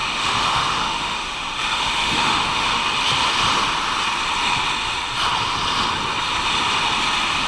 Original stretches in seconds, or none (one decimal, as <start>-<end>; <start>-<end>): 2.8-7.5